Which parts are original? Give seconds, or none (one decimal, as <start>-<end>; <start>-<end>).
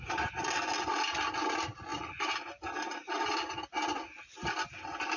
0.0-5.2